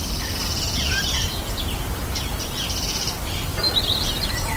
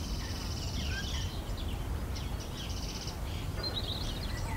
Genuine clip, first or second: second